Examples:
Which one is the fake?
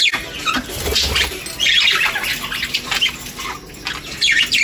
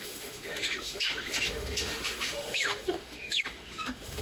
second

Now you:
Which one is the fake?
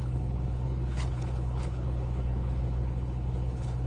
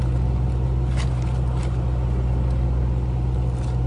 first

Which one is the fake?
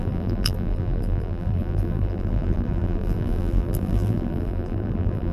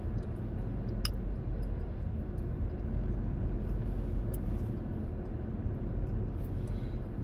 first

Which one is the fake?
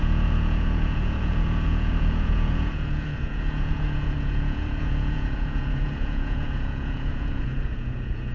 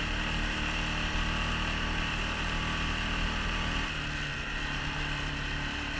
first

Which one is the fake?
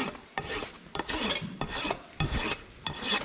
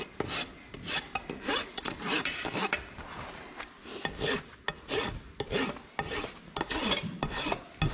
first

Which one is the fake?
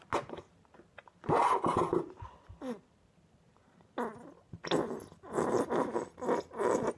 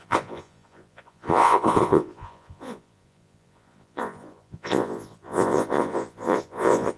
second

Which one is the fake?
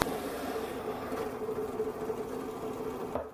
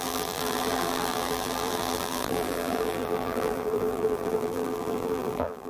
second